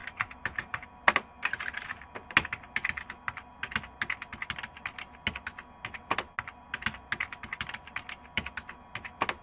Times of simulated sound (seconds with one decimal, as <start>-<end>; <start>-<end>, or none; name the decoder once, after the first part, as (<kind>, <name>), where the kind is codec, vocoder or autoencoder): 0.0-0.8 (vocoder, BigVGAN v2)